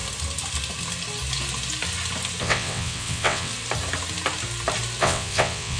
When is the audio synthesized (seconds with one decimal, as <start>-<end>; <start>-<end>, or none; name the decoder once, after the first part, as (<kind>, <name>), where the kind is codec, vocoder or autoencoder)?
2.4-3.5 (vocoder, WaveNeXt); 5.0-5.8

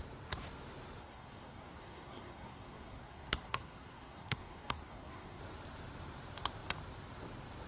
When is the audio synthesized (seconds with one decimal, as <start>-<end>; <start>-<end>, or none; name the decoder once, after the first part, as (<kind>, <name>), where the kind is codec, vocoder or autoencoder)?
1.0-5.4 (codec, SNAC)